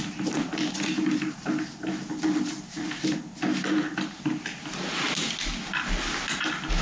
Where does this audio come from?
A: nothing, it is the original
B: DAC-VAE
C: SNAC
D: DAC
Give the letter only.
A